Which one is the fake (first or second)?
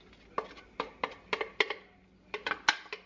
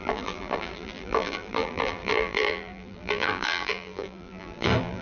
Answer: second